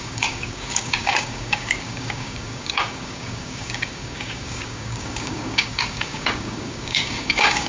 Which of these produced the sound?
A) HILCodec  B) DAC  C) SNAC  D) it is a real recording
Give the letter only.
B